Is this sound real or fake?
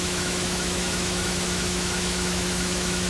fake